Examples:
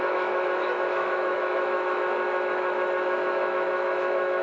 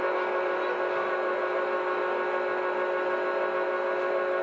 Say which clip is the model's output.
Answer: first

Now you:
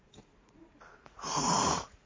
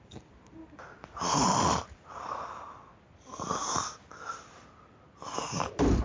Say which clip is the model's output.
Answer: first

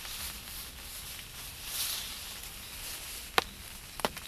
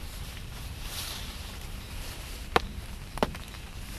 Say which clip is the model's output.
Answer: second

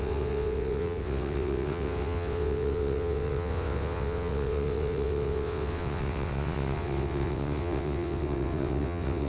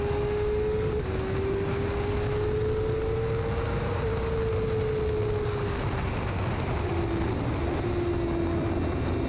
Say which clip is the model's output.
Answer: first